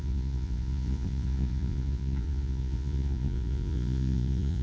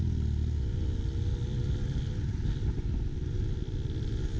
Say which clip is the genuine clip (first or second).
second